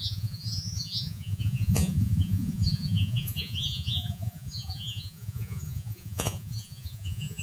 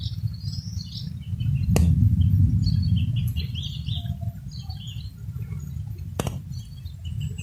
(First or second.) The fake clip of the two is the first